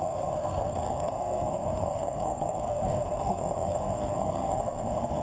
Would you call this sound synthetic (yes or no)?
yes